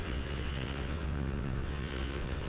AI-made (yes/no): yes